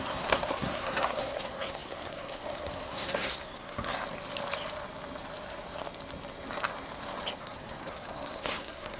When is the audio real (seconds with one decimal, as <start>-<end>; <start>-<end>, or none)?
3.9-7.4